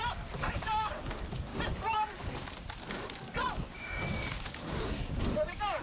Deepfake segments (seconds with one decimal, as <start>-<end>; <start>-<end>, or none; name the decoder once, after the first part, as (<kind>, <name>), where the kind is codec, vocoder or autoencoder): 0.5-1.5 (codec, DAC); 3.7-5.8

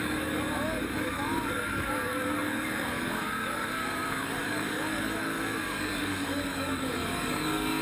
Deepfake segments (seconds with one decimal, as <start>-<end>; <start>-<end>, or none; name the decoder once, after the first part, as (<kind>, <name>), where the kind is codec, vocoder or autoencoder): 0.0-7.8 (codec, DAC)